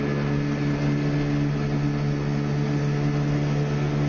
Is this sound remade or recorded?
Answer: recorded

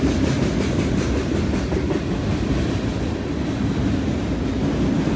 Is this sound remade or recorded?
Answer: recorded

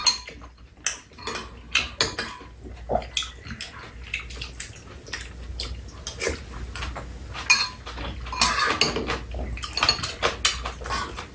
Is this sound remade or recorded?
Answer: recorded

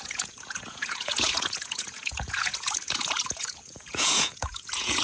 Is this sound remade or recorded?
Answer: remade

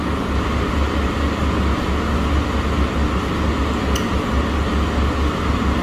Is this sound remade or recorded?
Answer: recorded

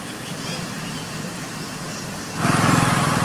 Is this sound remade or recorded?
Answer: recorded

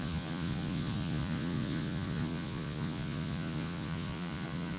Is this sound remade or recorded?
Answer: remade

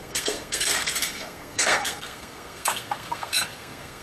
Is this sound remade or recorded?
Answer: remade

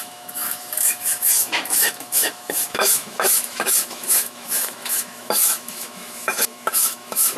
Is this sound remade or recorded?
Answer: remade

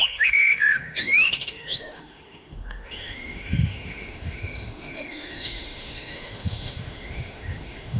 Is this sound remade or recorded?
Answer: remade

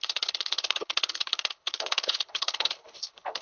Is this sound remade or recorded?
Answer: remade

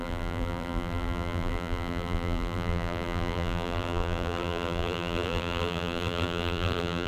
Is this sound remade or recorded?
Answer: remade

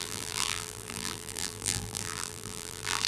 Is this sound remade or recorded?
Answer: remade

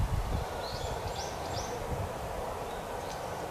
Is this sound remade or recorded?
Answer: recorded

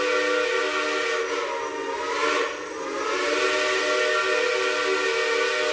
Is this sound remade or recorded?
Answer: recorded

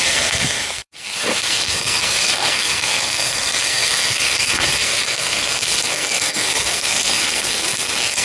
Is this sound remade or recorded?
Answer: remade